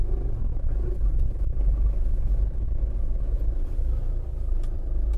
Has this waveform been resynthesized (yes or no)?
no